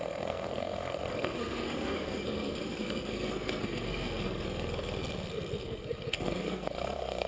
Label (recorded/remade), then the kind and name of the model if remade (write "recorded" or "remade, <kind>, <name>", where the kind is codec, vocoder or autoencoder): remade, codec, SNAC